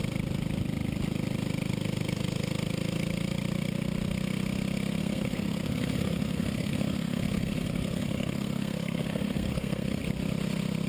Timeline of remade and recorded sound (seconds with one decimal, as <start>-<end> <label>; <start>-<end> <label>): 0.0-5.0 recorded; 5.0-10.0 remade; 10.0-10.9 recorded